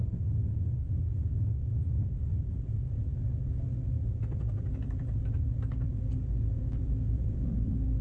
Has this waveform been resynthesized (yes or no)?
yes